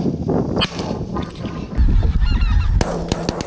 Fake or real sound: real